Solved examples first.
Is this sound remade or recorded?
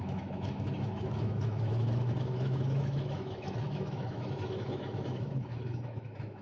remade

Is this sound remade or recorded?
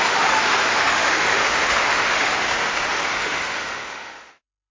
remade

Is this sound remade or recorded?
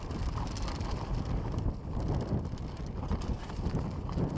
recorded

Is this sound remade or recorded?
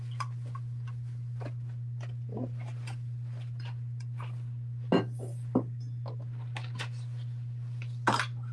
recorded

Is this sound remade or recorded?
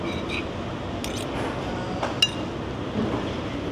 recorded